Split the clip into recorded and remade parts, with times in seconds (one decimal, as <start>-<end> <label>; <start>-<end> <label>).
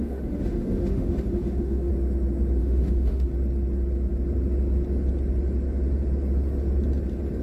0.0-1.9 remade; 1.9-2.6 recorded; 2.6-3.3 remade; 3.3-7.4 recorded